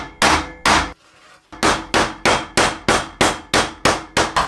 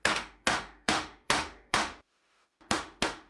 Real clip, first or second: first